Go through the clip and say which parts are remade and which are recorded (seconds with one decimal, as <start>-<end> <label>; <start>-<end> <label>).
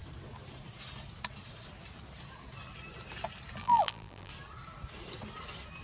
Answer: 0.0-3.6 recorded; 3.6-4.3 remade; 4.3-5.8 recorded